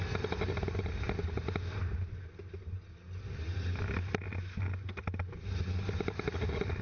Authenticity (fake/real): real